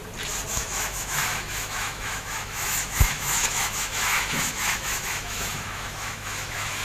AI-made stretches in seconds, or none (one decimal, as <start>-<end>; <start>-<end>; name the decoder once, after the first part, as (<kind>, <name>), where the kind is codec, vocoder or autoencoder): 0.5-6.8 (autoencoder, DAC-VAE)